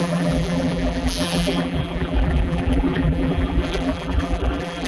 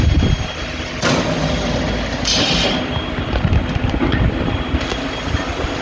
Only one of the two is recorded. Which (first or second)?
second